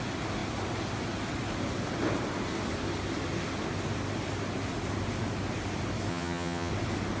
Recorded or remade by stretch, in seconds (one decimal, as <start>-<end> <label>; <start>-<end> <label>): 0.0-6.1 recorded; 6.1-6.7 remade; 6.7-7.2 recorded